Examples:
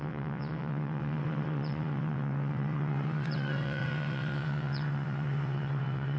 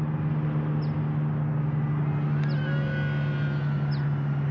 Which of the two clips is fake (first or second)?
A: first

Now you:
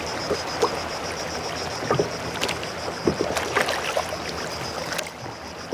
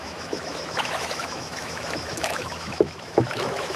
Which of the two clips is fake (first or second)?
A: second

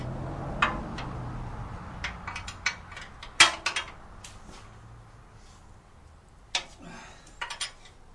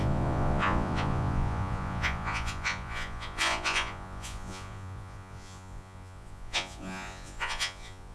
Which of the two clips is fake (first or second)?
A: second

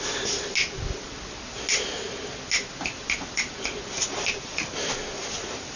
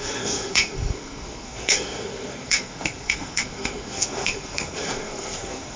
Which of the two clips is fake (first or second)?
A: second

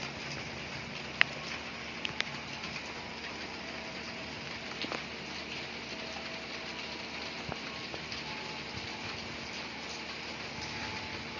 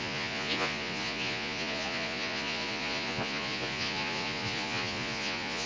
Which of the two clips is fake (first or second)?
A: second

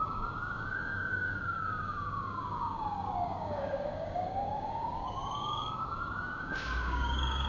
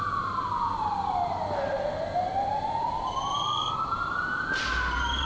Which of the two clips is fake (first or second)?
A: first